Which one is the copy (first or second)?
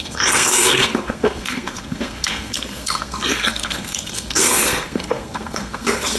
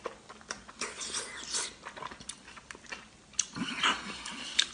first